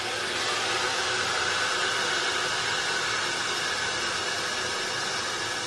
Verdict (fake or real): real